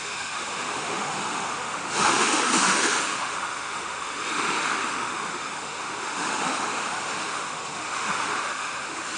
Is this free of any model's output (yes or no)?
no